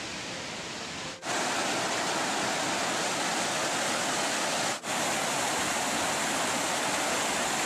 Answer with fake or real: real